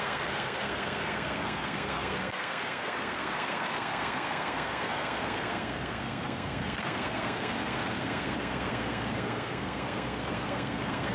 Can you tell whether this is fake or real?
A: fake